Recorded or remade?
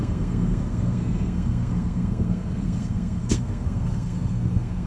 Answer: remade